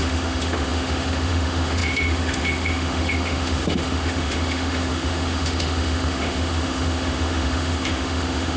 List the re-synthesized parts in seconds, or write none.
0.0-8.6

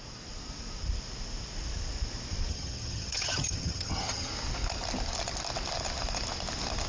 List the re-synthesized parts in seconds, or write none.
2.5-4.3

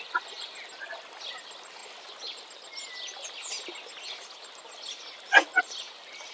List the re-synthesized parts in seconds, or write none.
none

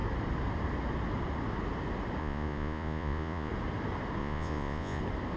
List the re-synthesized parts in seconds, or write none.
2.2-3.5; 4.2-5.0

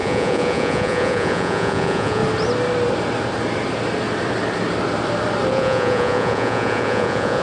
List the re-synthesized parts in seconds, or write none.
0.0-2.2; 5.5-7.4

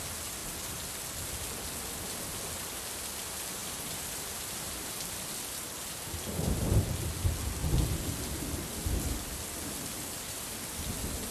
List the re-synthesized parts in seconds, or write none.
3.6-6.0